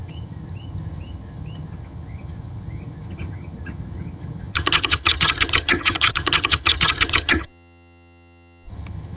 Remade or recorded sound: remade